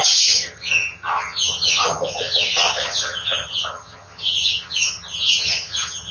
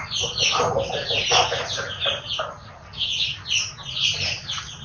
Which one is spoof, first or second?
first